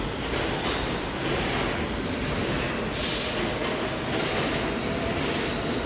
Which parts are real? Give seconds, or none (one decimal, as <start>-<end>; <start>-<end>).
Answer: 0.0-5.9